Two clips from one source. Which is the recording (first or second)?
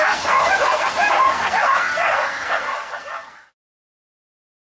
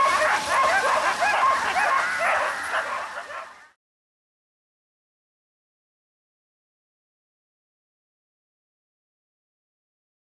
second